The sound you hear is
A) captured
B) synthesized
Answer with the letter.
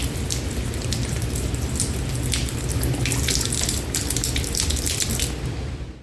A